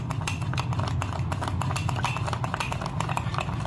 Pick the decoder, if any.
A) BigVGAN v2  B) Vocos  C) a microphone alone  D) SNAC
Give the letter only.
C